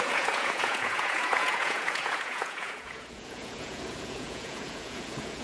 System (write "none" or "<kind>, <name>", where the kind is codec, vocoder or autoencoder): vocoder, Vocos